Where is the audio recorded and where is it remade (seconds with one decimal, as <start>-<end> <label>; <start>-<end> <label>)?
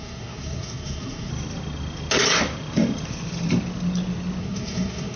0.0-1.3 remade; 1.3-4.4 recorded; 4.4-5.2 remade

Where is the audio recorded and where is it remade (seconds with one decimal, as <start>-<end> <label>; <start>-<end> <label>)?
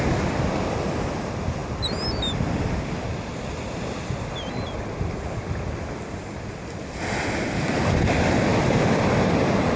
0.0-9.8 recorded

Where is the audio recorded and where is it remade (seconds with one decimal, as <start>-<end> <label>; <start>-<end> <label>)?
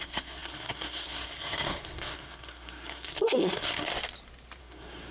0.0-3.9 remade; 3.9-4.6 recorded; 4.6-5.1 remade